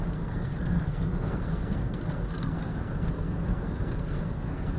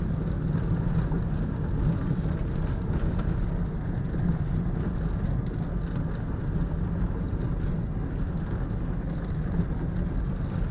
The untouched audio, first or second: second